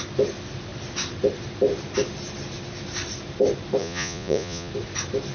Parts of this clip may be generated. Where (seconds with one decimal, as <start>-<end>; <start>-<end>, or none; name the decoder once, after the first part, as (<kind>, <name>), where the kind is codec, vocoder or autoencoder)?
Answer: 3.8-4.7 (vocoder, Vocos)

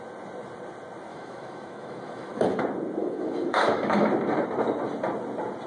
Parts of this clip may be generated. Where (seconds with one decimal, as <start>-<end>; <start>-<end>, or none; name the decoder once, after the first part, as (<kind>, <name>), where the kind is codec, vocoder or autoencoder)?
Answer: 1.1-2.6 (autoencoder, DAC-VAE); 3.0-4.1